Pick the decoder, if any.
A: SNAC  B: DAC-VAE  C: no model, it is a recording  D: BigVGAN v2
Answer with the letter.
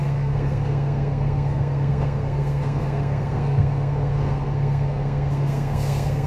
A